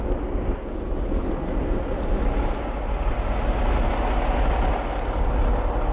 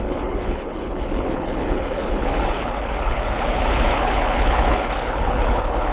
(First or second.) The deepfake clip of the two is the second